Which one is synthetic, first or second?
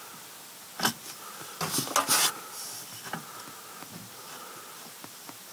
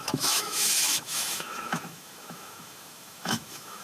second